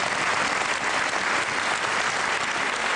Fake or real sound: real